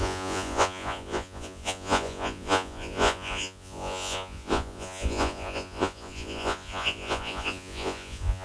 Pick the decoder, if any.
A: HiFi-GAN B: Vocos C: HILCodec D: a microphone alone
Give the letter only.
B